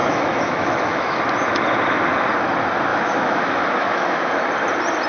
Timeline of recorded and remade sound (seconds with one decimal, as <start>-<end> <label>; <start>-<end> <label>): 0.0-1.2 remade; 1.2-2.9 recorded; 2.9-4.3 remade; 4.3-5.1 recorded